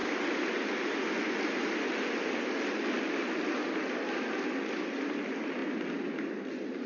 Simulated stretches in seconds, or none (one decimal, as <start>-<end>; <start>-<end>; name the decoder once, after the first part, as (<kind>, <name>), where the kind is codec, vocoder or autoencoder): none